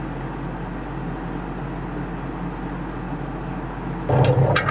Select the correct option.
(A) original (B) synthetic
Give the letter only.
A